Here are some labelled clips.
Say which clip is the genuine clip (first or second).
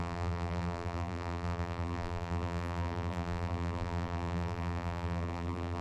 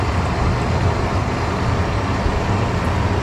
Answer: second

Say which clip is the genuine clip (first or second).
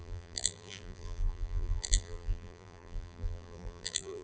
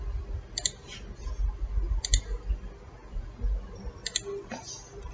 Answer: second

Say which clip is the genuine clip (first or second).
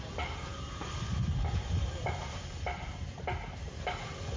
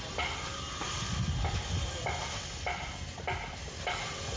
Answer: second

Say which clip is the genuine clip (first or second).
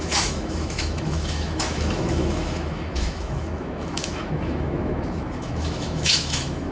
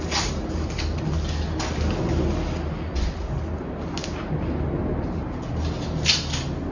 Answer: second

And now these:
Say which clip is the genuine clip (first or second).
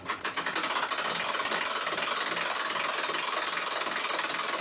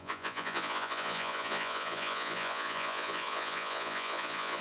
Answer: first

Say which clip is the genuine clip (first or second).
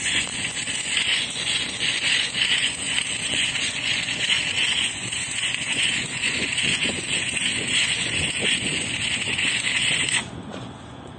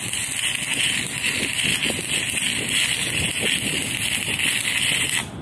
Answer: second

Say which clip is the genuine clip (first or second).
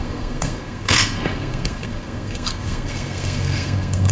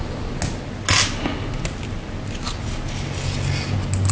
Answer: second